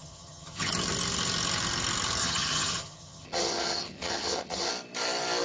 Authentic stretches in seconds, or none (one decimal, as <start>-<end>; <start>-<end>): 0.7-2.2; 4.7-5.4